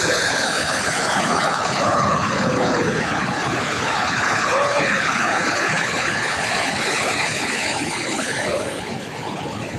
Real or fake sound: fake